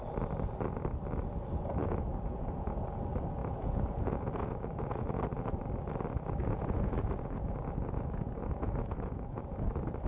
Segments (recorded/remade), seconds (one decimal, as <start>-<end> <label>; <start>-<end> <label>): 0.0-1.8 recorded; 1.8-2.7 remade; 2.7-3.4 recorded; 3.4-5.2 remade; 5.2-6.4 recorded; 6.4-9.7 remade; 9.7-10.1 recorded